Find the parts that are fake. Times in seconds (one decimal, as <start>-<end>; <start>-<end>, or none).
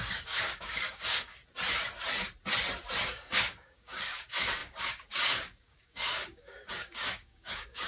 0.0-1.4; 3.0-7.9